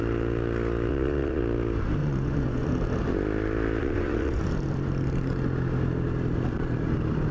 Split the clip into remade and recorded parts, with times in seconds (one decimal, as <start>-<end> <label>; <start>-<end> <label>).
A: 0.0-0.9 recorded; 0.9-1.4 remade; 1.4-2.0 recorded; 2.0-2.7 remade; 2.7-3.8 recorded; 3.8-4.4 remade; 4.4-7.3 recorded